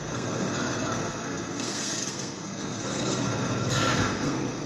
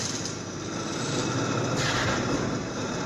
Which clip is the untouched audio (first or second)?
second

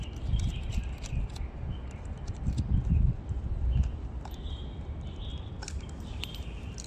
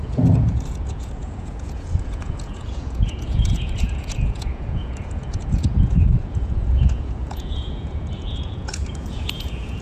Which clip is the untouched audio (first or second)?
first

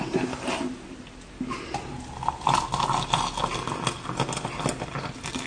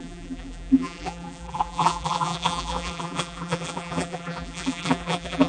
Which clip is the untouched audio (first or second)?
first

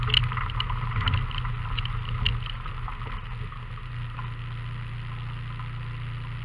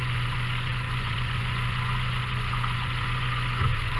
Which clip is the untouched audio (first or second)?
first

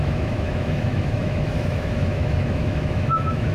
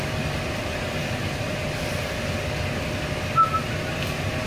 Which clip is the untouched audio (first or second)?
second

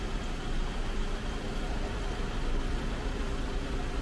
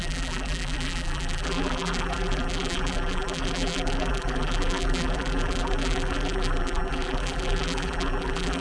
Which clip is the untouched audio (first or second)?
first